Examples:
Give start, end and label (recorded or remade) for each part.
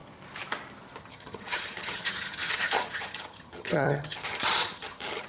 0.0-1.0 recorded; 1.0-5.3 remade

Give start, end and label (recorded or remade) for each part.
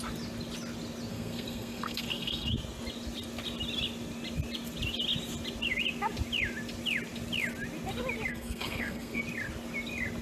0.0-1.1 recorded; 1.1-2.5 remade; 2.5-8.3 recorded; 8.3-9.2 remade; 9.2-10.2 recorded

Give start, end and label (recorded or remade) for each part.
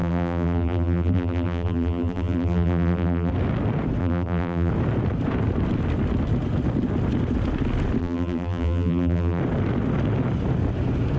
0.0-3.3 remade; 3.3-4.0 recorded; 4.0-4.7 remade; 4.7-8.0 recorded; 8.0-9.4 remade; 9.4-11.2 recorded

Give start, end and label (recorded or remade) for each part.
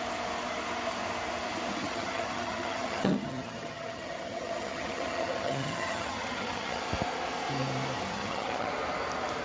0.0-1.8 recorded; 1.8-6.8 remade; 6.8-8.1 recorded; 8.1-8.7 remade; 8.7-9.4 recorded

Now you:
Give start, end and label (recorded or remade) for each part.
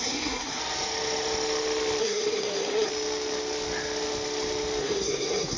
0.0-0.6 remade; 0.6-2.0 recorded; 2.0-2.9 remade; 2.9-4.8 recorded; 4.8-5.6 remade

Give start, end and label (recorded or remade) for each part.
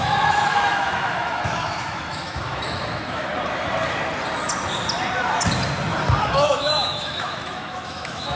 0.0-3.3 remade; 3.3-6.2 recorded; 6.2-8.4 remade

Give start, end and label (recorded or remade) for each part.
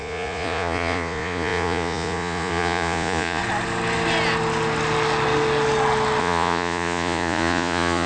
0.0-3.4 remade; 3.4-6.2 recorded; 6.2-8.1 remade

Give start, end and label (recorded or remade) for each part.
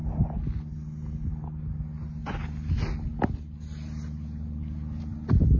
0.0-5.6 recorded